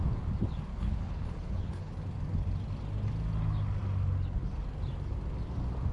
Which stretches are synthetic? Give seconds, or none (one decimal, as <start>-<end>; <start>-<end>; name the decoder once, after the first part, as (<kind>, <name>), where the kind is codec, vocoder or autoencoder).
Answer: 0.7-1.9 (codec, HILCodec)